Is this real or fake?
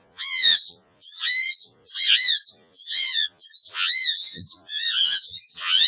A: fake